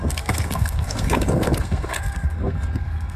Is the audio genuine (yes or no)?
no